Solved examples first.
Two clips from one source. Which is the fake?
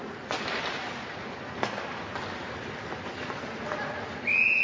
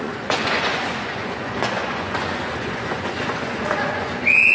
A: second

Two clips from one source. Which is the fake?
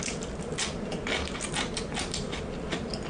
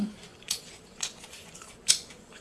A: second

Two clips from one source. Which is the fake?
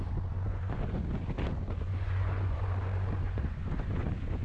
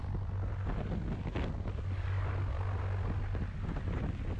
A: first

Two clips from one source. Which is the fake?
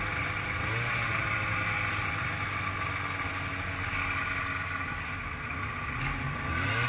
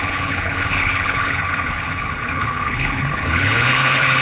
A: second